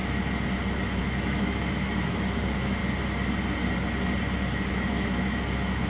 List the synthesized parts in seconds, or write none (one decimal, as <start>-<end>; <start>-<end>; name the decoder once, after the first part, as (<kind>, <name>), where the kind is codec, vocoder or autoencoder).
1.0-2.8 (autoencoder, DAC-VAE); 4.7-5.9